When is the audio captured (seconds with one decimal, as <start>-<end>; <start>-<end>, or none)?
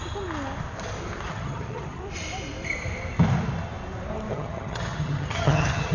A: 0.0-1.3; 2.0-4.3